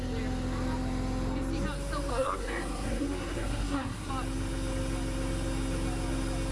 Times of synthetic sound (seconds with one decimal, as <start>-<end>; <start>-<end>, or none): 2.1-4.1

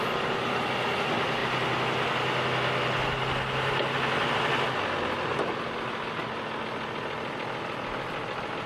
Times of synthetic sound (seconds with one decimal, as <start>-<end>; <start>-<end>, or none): none

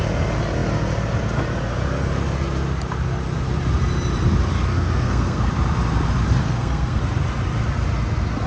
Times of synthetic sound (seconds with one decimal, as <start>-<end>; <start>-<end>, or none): 4.7-5.5; 6.4-7.0

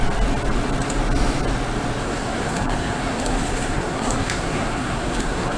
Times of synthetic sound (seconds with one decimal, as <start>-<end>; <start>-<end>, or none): 2.0-5.6

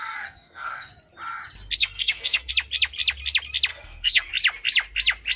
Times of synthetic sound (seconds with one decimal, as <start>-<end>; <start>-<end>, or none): 0.0-0.9; 1.8-2.5; 3.7-4.3